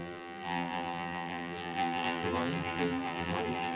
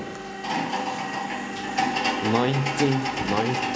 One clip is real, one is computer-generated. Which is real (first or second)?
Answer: second